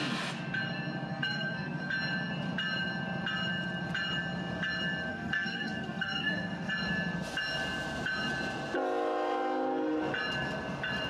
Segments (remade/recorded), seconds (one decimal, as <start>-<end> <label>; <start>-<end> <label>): 0.0-1.1 recorded; 1.1-1.9 remade; 1.9-5.1 recorded; 5.1-6.7 remade; 6.7-11.1 recorded